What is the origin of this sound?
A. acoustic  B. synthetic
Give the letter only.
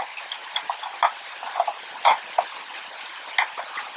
A